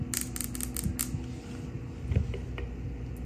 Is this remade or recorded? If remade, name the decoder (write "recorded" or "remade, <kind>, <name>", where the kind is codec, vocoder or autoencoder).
recorded